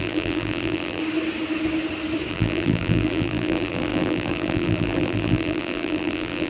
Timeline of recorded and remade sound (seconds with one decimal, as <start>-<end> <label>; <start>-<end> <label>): 0.0-1.0 remade; 1.0-2.3 recorded; 2.3-6.5 remade